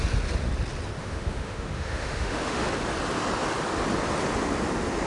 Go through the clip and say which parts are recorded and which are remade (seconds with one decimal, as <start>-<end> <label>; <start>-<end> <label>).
0.0-1.0 recorded; 1.0-2.7 remade; 2.7-5.1 recorded